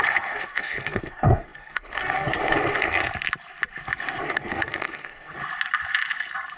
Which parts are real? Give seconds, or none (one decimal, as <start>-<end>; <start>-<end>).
3.0-4.2; 5.4-6.6